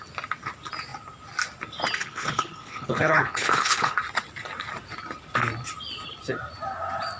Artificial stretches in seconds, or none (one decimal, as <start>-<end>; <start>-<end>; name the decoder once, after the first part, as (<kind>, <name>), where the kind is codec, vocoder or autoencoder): 2.0-4.0 (codec, HILCodec)